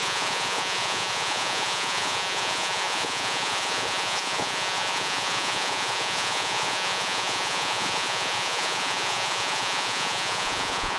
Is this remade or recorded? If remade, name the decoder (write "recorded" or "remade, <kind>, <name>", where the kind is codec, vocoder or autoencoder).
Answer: remade, vocoder, Vocos